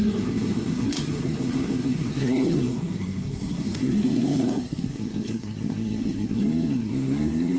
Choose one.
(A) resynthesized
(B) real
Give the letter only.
A